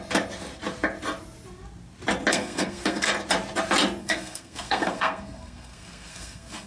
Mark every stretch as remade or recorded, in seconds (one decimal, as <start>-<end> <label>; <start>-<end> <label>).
0.0-2.3 recorded; 2.3-3.1 remade; 3.1-4.0 recorded; 4.0-6.7 remade